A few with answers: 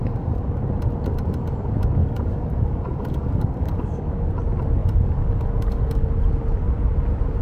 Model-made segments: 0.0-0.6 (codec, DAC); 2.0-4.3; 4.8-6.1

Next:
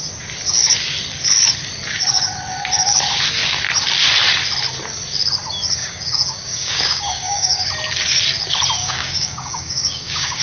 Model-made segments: 5.8-7.7 (codec, DAC); 8.8-10.4

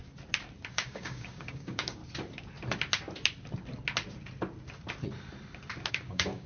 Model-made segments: 0.7-2.0 (codec, DAC); 5.9-6.5

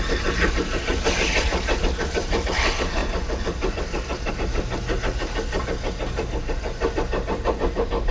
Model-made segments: none